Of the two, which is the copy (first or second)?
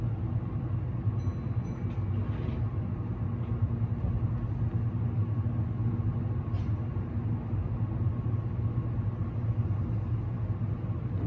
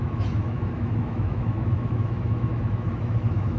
second